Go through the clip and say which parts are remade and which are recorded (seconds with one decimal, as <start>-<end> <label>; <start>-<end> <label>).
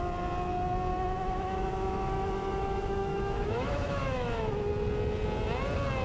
0.0-0.9 recorded; 0.9-4.5 remade; 4.5-6.0 recorded